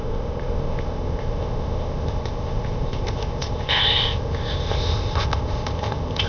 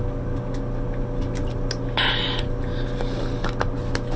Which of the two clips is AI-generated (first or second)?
first